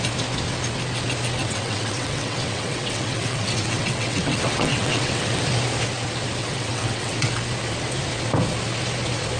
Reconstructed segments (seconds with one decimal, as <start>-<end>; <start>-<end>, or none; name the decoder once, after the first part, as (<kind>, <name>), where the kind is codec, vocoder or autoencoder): 1.4-5.4 (vocoder, WaveNeXt); 6.4-7.3

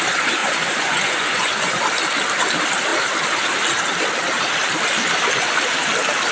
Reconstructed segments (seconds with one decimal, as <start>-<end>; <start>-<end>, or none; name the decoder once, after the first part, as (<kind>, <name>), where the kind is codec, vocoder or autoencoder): 0.4-1.8 (vocoder, Vocos)